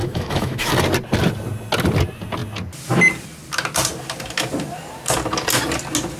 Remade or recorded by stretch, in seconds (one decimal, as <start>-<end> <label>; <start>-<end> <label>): 0.0-0.7 remade; 0.7-6.2 recorded